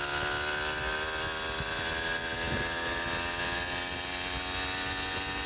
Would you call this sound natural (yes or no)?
yes